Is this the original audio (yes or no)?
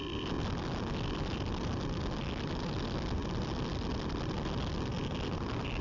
yes